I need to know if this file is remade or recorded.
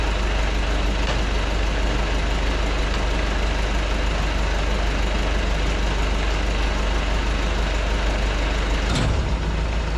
recorded